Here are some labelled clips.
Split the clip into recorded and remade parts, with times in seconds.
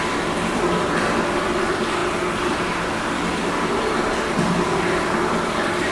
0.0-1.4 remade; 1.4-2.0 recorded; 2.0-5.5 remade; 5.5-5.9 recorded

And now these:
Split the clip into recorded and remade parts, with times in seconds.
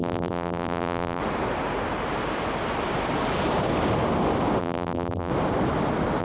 0.0-1.2 remade; 1.2-4.6 recorded; 4.6-5.3 remade; 5.3-6.2 recorded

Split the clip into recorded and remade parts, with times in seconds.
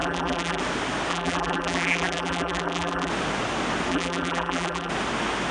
0.0-0.6 remade; 0.6-1.1 recorded; 1.1-3.1 remade; 3.1-3.9 recorded; 3.9-4.9 remade; 4.9-5.5 recorded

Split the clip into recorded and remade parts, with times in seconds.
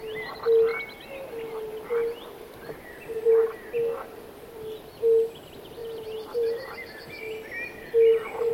0.0-5.8 recorded; 5.8-7.0 remade; 7.0-8.5 recorded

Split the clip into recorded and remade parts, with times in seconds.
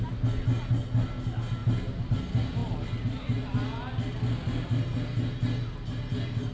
0.0-1.6 recorded; 1.6-2.2 remade; 2.2-6.5 recorded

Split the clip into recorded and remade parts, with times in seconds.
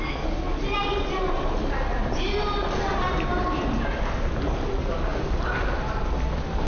0.0-0.9 recorded; 0.9-2.8 remade; 2.8-5.1 recorded; 5.1-6.0 remade; 6.0-6.7 recorded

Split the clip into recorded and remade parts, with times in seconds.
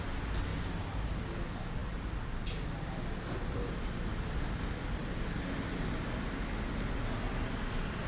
0.0-0.5 recorded; 0.5-1.1 remade; 1.1-8.1 recorded